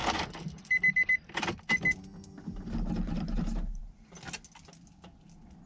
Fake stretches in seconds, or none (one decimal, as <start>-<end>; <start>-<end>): none